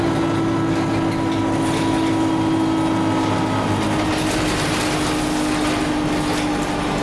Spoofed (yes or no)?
no